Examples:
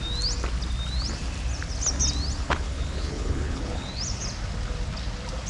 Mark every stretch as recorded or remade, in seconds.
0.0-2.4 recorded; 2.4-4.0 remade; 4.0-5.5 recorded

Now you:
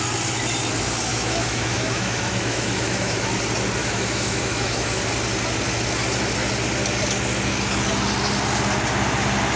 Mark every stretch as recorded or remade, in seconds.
0.0-1.1 recorded; 1.1-3.4 remade; 3.4-3.8 recorded; 3.8-5.0 remade; 5.0-9.6 recorded

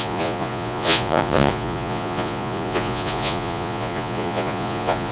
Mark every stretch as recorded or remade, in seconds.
0.0-5.1 remade